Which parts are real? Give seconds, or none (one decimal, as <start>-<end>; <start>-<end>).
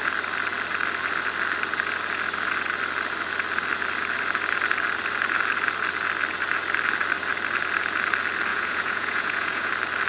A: 0.0-8.5; 9.7-10.1